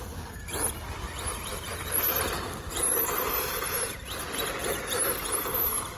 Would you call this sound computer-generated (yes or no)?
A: no